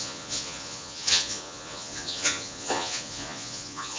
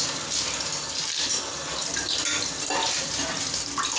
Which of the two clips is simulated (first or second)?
first